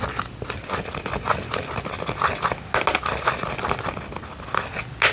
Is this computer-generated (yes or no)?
no